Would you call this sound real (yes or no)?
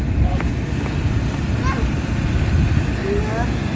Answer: yes